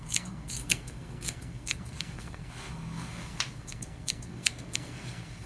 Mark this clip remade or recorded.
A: remade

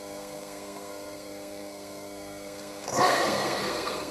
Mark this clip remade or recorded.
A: remade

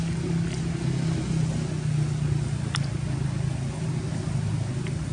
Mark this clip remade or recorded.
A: recorded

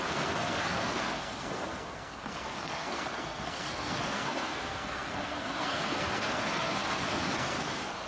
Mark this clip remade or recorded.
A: remade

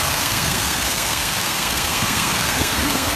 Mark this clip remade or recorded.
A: remade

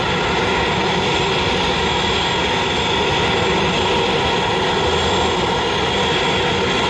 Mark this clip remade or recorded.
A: recorded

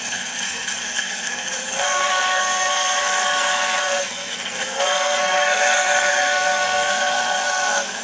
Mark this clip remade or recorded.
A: remade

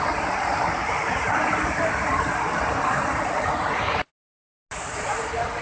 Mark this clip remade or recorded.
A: recorded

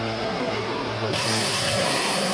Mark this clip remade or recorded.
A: remade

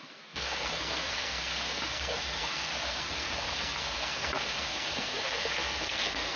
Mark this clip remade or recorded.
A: remade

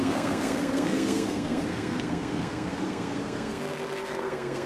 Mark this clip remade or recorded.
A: remade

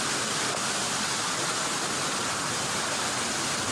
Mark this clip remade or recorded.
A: recorded